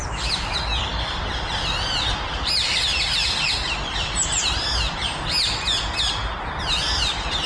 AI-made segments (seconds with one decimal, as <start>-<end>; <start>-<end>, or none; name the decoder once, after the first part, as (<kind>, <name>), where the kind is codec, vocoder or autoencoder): 0.0-0.5 (vocoder, BigVGAN v2)